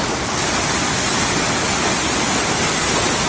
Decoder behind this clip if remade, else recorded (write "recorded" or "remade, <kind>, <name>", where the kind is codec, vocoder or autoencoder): recorded